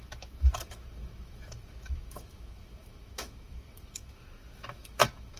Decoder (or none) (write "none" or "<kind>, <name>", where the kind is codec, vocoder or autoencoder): autoencoder, DAC-VAE